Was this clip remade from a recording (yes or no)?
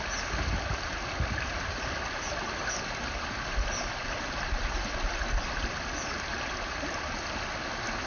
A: no